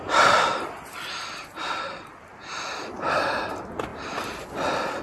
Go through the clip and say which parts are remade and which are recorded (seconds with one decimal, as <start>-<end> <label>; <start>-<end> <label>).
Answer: 0.0-5.0 recorded